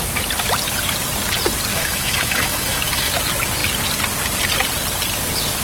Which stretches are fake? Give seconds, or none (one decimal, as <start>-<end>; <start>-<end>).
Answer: 1.7-3.1